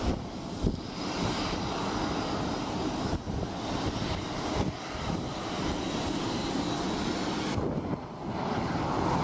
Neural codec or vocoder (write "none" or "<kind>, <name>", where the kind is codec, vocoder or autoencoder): vocoder, BigVGAN v2